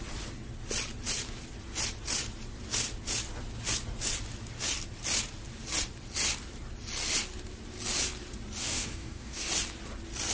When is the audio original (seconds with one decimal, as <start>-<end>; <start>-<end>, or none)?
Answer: 0.0-8.6; 9.5-10.3